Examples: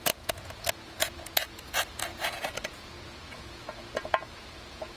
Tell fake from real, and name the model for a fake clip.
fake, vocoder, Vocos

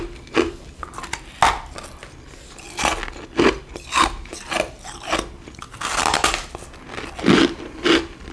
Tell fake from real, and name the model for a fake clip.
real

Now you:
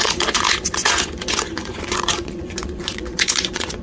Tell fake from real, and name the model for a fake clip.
fake, vocoder, Vocos